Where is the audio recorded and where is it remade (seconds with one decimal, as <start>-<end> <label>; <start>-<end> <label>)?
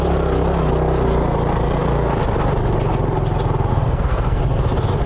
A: 0.0-3.7 recorded; 3.7-4.4 remade; 4.4-5.1 recorded